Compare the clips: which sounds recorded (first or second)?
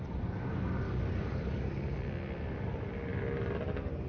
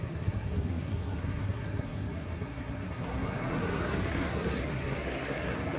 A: first